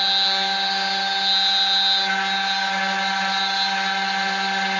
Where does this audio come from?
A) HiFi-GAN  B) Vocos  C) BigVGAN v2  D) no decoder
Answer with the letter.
D